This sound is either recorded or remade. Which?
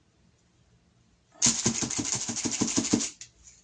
recorded